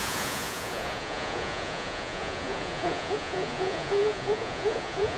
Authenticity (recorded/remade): remade